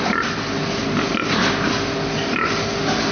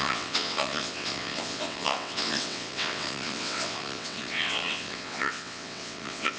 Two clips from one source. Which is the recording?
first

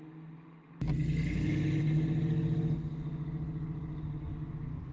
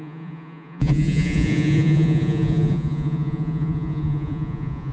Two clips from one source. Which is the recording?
first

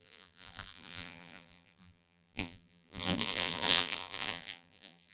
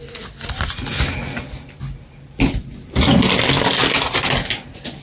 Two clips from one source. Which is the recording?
second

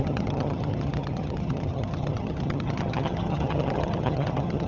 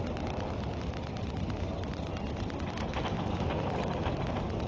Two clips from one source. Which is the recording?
second